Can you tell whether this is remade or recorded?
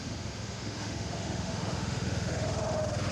remade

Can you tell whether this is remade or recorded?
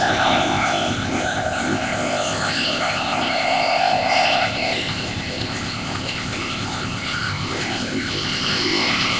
remade